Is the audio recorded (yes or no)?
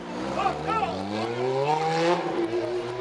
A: yes